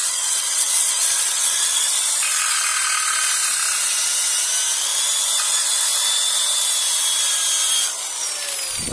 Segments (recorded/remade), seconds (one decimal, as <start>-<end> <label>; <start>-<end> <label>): 0.0-1.9 remade; 1.9-8.9 recorded